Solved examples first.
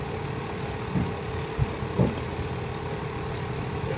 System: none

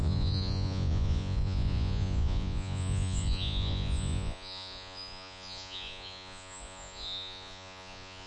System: vocoder, Vocos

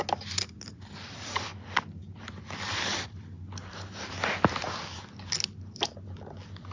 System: none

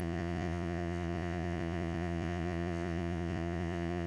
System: vocoder, Vocos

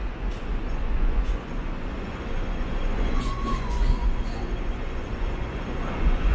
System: vocoder, Vocos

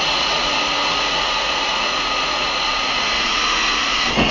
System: vocoder, Vocos